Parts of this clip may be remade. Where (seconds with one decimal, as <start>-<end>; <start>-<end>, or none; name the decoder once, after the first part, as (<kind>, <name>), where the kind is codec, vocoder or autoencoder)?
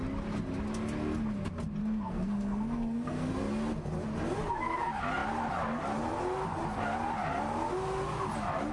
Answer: 1.8-3.3 (codec, SNAC)